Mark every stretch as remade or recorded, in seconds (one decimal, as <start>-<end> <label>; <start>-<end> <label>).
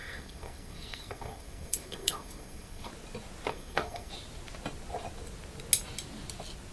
0.0-2.9 remade; 2.9-3.5 recorded; 3.5-4.1 remade; 4.1-6.7 recorded